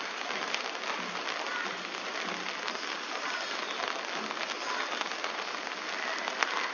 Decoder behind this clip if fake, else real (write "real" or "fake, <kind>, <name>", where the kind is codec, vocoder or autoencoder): real